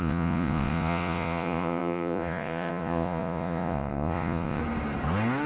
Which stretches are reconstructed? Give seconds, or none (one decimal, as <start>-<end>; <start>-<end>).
0.0-4.6